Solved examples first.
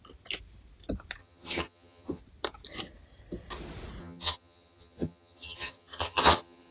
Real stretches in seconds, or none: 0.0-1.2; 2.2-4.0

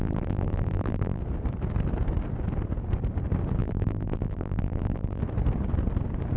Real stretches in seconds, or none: 1.2-3.6; 5.2-6.4

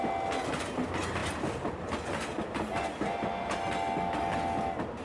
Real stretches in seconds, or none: 0.0-5.0

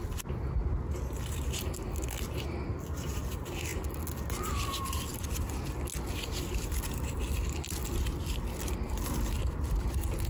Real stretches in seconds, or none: 0.0-10.3